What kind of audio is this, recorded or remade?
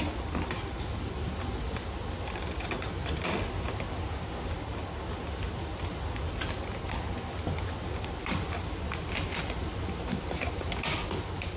recorded